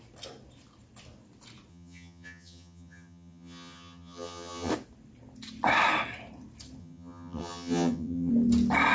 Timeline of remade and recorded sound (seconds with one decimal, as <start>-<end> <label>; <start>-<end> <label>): 0.0-1.7 recorded; 1.7-4.7 remade; 4.7-6.8 recorded; 6.8-8.3 remade; 8.3-8.9 recorded